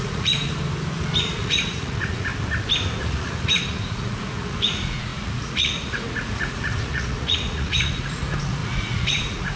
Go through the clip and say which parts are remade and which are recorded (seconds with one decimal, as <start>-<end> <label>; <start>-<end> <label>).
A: 0.0-0.5 remade; 0.5-1.2 recorded; 1.2-2.3 remade; 2.3-3.0 recorded; 3.0-9.6 remade